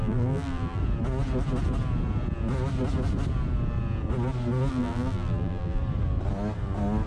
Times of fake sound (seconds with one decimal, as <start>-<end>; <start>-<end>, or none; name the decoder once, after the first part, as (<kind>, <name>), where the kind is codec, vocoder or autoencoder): 0.0-0.8 (vocoder, BigVGAN v2); 4.7-5.8